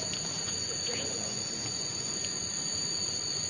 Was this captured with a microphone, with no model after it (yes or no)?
no